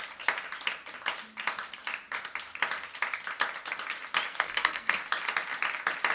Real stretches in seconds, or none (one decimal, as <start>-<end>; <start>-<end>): 0.0-4.3; 5.0-6.1